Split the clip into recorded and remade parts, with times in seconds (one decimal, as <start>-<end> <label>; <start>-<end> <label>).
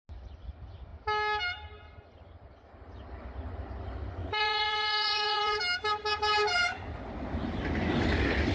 0.0-4.2 recorded; 4.2-5.6 remade; 5.6-8.5 recorded